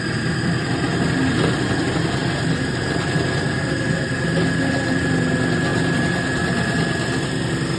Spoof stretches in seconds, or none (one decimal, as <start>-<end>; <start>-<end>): none